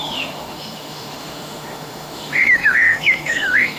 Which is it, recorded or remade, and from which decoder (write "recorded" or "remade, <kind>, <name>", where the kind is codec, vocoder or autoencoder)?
remade, autoencoder, DAC-VAE